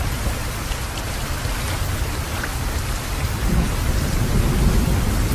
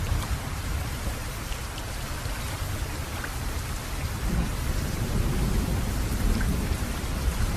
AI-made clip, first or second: second